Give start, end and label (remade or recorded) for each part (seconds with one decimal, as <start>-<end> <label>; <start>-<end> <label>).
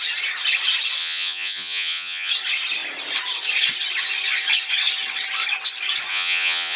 0.0-1.0 recorded; 1.0-2.3 remade; 2.3-6.1 recorded; 6.1-6.8 remade